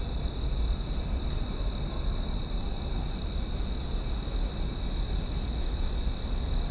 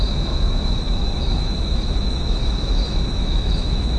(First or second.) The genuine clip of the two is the first